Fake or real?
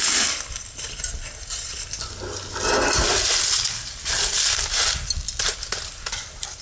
real